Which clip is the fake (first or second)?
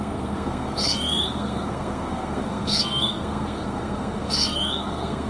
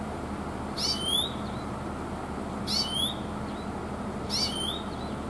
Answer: first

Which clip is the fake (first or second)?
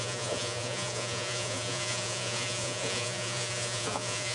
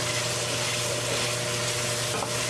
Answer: first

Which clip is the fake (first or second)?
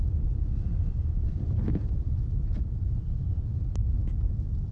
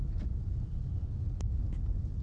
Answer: first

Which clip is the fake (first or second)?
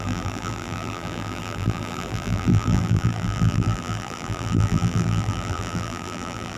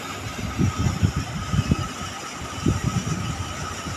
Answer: first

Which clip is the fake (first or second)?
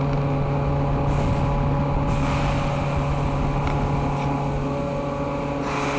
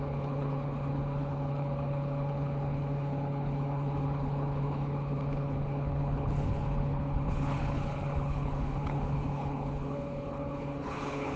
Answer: second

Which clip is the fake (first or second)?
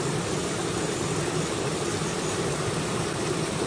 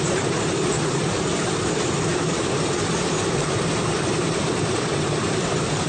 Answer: second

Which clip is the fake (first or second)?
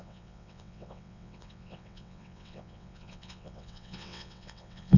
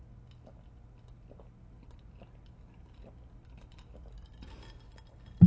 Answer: first